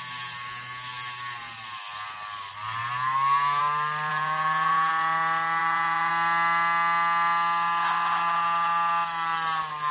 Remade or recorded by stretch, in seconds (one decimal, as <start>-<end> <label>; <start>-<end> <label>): 0.0-4.1 recorded; 4.1-4.9 remade; 4.9-5.6 recorded; 5.6-6.1 remade; 6.1-9.9 recorded